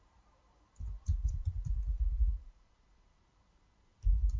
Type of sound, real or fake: fake